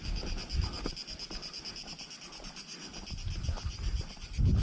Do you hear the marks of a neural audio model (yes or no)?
no